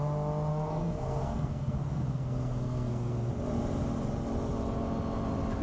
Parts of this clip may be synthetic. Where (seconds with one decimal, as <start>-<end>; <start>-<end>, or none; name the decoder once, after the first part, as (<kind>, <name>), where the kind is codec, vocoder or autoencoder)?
0.5-3.3 (codec, SNAC)

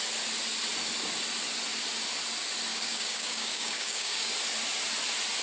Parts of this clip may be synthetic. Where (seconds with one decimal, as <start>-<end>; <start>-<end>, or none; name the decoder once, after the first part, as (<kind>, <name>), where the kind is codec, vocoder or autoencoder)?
2.7-4.3 (codec, DAC)

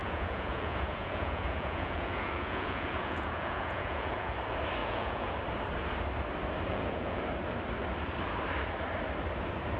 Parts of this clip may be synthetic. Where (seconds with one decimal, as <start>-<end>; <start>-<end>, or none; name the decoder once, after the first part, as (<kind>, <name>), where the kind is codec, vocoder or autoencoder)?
0.0-4.3 (vocoder, Vocos); 4.8-5.3; 6.7-7.2